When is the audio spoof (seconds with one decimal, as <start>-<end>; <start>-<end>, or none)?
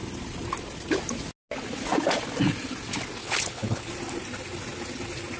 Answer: 3.2-3.9